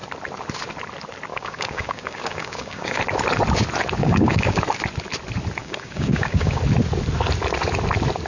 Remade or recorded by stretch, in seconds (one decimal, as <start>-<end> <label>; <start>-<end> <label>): 0.0-1.3 recorded; 1.3-3.0 remade; 3.0-4.0 recorded; 4.0-4.6 remade; 4.6-5.6 recorded; 5.6-6.6 remade; 6.6-8.3 recorded